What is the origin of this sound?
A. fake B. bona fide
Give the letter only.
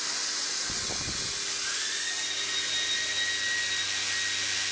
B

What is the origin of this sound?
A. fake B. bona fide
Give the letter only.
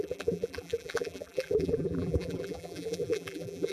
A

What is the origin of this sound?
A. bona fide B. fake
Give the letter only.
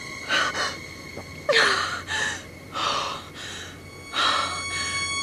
A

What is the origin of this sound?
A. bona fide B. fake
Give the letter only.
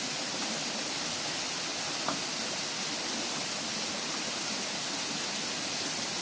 A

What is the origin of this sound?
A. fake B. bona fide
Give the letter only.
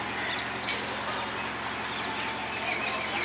B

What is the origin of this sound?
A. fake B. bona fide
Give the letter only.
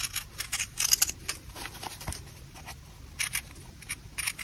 B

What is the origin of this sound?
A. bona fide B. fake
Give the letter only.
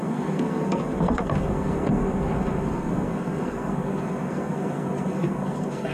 B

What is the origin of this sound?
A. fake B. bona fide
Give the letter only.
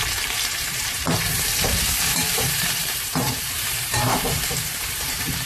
A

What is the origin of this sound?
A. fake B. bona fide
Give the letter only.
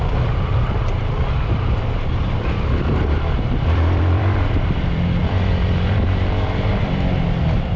A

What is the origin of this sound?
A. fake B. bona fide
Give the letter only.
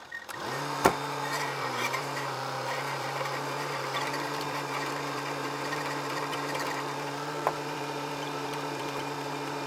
A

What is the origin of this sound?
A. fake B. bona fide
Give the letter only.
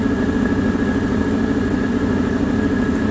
B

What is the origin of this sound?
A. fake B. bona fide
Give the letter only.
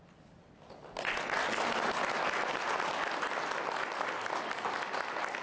B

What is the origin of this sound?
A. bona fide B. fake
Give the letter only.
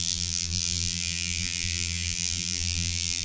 B